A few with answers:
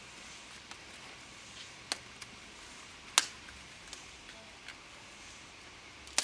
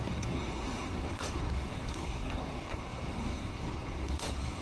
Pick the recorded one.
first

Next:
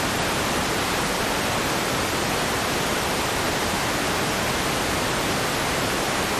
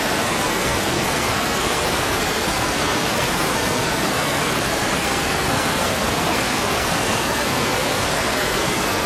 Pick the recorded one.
first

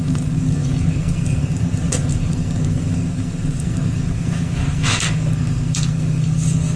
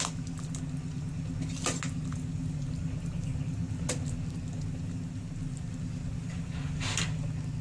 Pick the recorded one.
second